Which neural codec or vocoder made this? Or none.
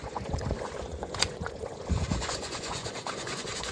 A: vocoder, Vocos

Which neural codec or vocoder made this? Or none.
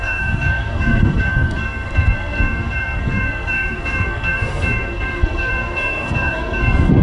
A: codec, SNAC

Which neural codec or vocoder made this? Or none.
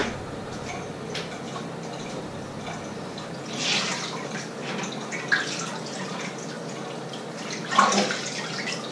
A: none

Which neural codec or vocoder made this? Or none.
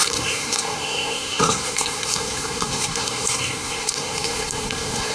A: codec, SNAC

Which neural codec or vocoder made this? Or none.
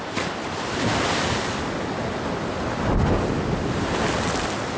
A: none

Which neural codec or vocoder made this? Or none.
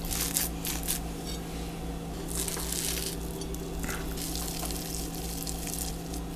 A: none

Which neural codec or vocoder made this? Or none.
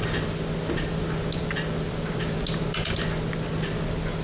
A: none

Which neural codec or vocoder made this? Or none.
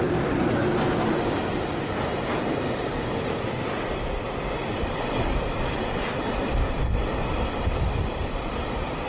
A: none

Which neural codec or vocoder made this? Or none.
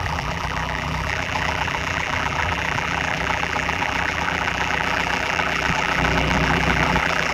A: vocoder, BigVGAN v2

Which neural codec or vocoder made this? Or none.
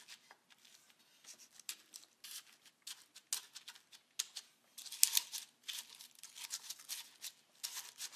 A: none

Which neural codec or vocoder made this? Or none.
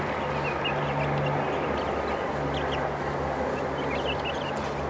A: none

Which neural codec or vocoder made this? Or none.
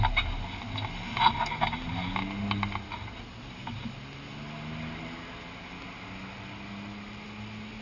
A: none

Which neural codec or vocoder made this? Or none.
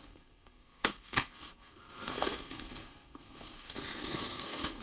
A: codec, SNAC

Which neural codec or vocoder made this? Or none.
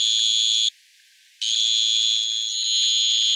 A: none